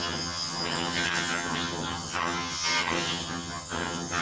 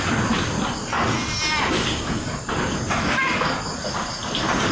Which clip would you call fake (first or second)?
first